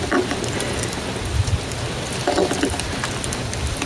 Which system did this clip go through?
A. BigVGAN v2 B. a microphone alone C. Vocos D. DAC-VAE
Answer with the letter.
B